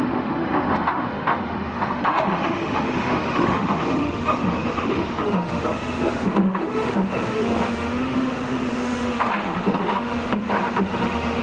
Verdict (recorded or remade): remade